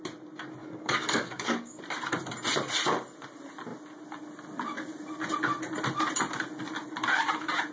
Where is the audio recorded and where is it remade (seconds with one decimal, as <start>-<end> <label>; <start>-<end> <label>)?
0.0-0.6 recorded; 0.6-1.8 remade; 1.8-7.7 recorded

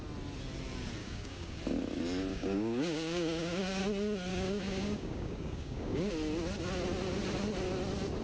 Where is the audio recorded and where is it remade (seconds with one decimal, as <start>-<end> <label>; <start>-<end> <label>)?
0.0-1.0 recorded; 1.0-1.6 remade; 1.6-2.3 recorded; 2.3-3.8 remade; 3.8-4.3 recorded; 4.3-6.1 remade; 6.1-8.2 recorded

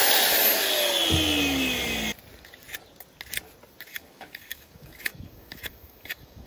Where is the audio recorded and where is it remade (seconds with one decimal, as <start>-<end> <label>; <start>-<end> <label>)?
0.0-3.9 recorded; 3.9-6.5 remade

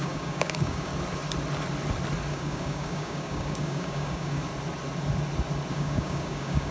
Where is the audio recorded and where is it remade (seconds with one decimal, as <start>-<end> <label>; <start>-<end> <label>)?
0.0-0.9 remade; 0.9-2.3 recorded; 2.3-4.5 remade; 4.5-5.7 recorded; 5.7-6.7 remade

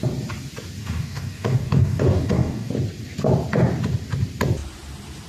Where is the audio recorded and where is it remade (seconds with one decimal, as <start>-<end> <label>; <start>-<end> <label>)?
0.0-0.8 recorded; 0.8-2.7 remade; 2.7-5.3 recorded

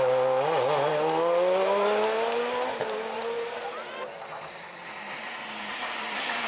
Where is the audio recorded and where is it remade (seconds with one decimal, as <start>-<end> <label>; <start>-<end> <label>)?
0.0-6.5 recorded

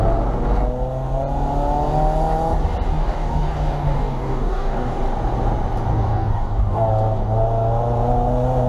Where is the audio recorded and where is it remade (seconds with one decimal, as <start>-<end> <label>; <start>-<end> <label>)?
0.0-2.9 recorded; 2.9-5.0 remade; 5.0-5.9 recorded; 5.9-6.9 remade; 6.9-8.7 recorded

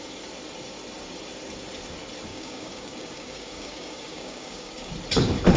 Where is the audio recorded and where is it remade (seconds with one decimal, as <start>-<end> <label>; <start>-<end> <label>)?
0.0-2.3 recorded; 2.3-4.9 remade; 4.9-5.6 recorded